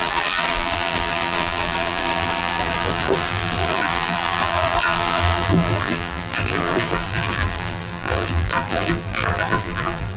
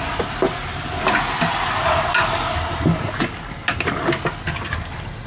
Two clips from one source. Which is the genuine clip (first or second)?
second